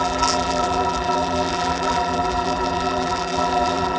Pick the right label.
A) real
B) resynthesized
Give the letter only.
B